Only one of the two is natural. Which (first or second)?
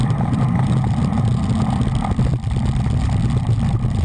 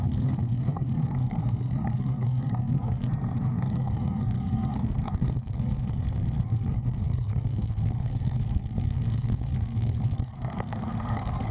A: first